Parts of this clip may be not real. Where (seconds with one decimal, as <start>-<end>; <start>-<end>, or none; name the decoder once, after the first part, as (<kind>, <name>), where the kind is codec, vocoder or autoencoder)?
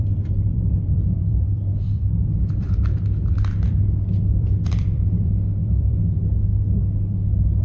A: 0.0-3.8 (vocoder, BigVGAN v2); 4.3-6.5